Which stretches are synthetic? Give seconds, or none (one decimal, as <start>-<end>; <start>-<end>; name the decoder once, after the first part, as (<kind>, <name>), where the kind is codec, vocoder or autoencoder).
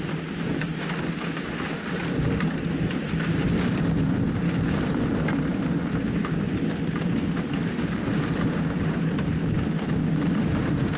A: 0.0-5.5 (vocoder, BigVGAN v2); 7.4-11.0